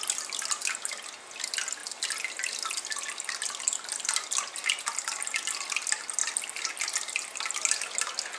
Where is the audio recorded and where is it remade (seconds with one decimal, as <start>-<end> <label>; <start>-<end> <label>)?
0.0-8.4 recorded